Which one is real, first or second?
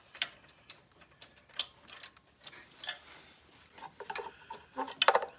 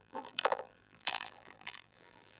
first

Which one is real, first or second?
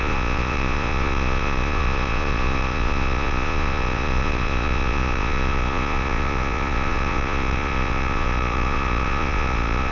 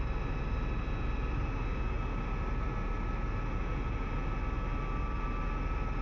second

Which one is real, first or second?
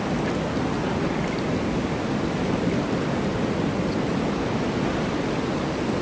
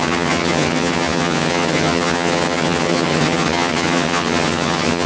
first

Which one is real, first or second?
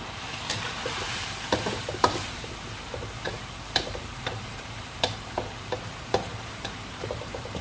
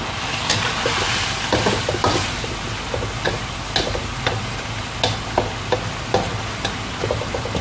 second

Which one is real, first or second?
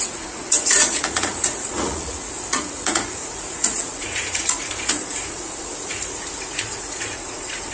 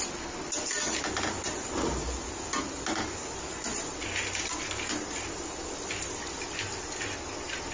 second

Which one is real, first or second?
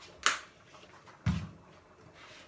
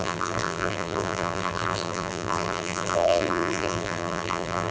first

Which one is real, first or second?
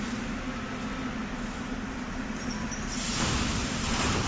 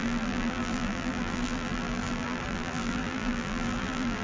first